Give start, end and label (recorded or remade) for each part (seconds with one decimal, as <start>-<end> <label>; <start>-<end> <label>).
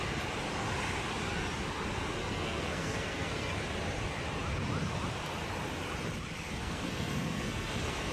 0.0-2.2 recorded; 2.2-3.6 remade; 3.6-6.6 recorded; 6.6-8.1 remade